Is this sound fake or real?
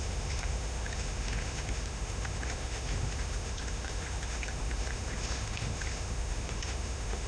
fake